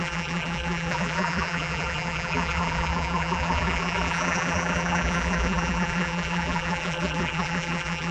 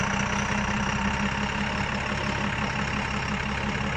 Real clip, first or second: second